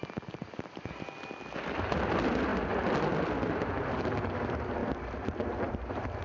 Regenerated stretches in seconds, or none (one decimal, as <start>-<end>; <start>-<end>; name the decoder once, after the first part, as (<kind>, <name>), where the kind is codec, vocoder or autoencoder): none